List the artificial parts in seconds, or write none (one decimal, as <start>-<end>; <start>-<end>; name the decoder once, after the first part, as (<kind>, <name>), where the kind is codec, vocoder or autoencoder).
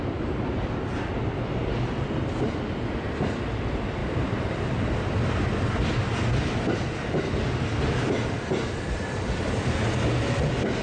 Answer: 4.0-8.8 (vocoder, BigVGAN v2)